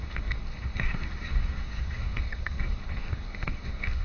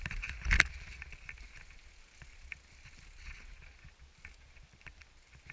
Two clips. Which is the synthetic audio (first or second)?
first